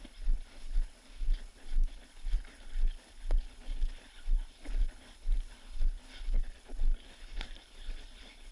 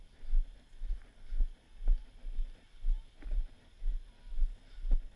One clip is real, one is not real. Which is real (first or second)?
second